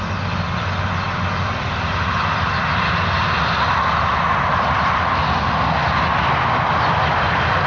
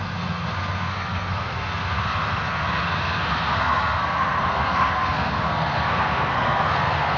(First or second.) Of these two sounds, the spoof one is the second